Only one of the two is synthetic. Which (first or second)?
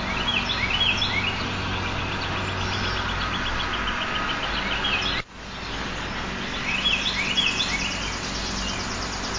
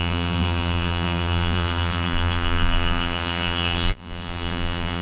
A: second